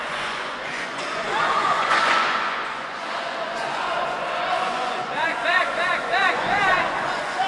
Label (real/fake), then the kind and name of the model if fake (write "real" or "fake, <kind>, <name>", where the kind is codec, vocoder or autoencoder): fake, vocoder, Vocos